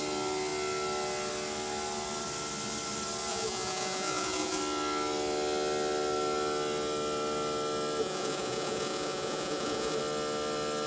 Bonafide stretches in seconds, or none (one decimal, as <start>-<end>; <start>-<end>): 0.0-3.3; 4.6-8.0; 10.0-10.9